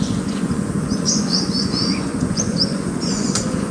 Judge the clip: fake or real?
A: fake